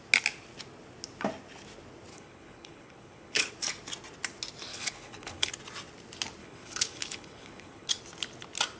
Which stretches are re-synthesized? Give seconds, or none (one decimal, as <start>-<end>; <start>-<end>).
2.1-3.5; 4.7-5.5; 6.4-8.0